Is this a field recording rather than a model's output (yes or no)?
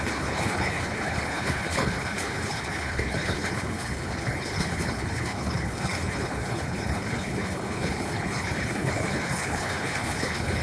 no